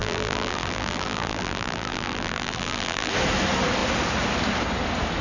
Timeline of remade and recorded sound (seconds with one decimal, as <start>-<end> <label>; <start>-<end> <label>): 0.0-3.1 remade; 3.1-5.2 recorded